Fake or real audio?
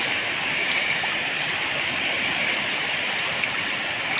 real